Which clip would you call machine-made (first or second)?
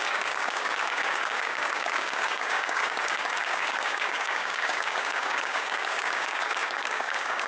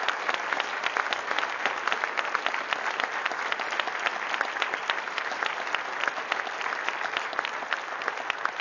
first